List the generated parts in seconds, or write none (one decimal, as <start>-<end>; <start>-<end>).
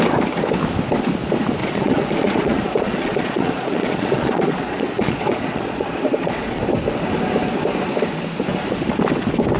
1.6-6.6